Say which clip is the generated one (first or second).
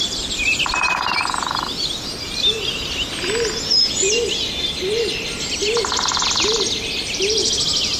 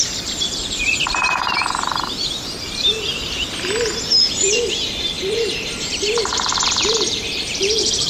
second